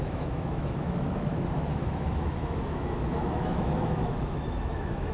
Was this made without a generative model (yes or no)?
no